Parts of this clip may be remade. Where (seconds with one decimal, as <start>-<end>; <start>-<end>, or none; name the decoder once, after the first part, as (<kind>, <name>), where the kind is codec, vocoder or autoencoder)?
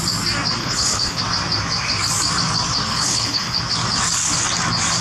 0.6-1.2 (codec, HILCodec); 2.9-3.6